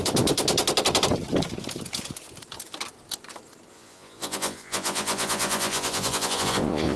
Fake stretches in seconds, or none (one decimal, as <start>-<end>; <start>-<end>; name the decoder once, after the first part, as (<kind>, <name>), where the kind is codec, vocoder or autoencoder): 3.7-7.0 (vocoder, Vocos)